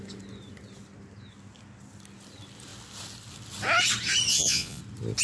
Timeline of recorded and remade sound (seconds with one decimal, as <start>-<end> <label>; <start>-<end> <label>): 0.0-4.3 recorded; 4.3-4.8 remade; 4.8-5.2 recorded